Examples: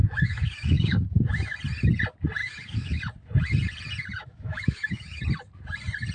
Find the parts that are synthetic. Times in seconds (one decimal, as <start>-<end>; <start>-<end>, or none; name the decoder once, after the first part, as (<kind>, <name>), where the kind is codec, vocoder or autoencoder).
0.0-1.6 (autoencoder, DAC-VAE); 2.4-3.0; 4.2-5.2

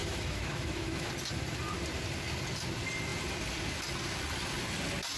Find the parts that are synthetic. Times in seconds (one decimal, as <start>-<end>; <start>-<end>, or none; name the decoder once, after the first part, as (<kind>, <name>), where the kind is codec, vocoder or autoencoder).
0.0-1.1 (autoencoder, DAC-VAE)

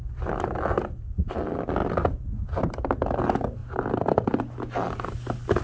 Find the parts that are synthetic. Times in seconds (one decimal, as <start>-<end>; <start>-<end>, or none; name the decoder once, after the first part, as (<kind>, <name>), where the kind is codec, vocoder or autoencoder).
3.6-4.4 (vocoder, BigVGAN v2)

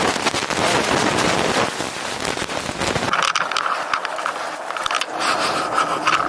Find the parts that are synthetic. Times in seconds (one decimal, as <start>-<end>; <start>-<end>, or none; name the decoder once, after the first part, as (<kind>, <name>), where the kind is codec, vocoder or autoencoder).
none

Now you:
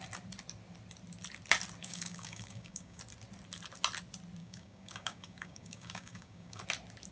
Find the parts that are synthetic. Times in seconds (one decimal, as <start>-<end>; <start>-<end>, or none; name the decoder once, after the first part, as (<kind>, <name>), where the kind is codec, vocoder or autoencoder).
1.8-3.0 (codec, DAC); 4.4-6.6